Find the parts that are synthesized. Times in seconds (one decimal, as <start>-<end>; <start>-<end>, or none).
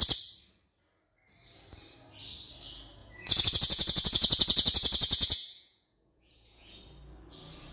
3.0-6.8